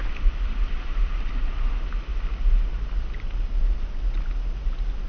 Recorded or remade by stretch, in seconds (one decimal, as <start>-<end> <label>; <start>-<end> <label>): 0.0-1.5 remade; 1.5-5.1 recorded